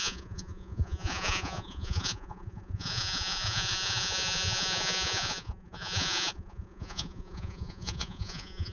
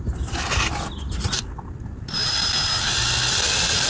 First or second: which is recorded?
second